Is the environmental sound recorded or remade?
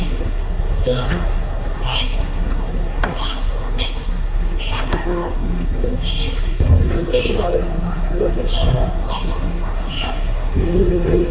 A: remade